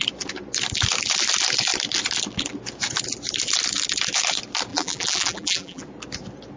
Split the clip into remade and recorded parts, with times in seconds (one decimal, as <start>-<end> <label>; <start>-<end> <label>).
0.0-4.7 recorded; 4.7-5.8 remade; 5.8-6.6 recorded